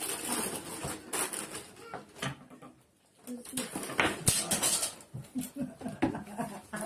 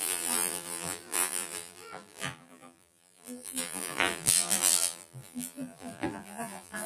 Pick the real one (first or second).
first